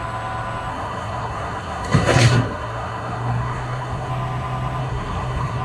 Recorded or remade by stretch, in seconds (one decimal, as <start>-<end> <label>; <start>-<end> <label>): 0.0-0.7 recorded; 0.7-4.1 remade; 4.1-4.8 recorded; 4.8-5.6 remade